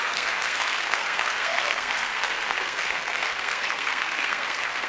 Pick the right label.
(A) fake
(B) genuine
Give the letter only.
A